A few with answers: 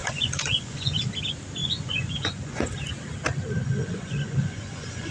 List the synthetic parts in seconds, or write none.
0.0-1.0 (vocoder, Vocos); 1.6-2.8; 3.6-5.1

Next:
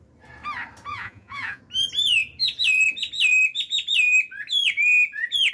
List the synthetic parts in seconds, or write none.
0.9-1.6 (vocoder, Vocos)

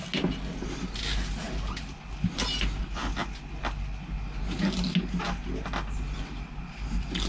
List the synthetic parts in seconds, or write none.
none

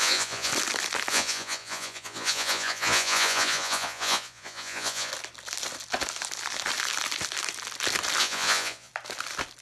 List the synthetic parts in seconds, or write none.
0.0-0.5 (vocoder, Vocos); 1.1-5.1; 8.2-8.9

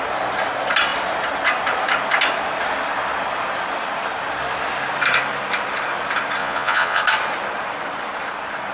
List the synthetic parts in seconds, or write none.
6.4-7.0 (vocoder, Vocos)